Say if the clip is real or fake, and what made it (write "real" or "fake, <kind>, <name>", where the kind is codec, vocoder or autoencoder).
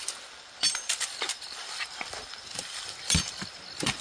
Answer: fake, vocoder, BigVGAN v2